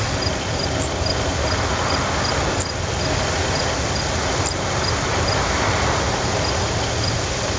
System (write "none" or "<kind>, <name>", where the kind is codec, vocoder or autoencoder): none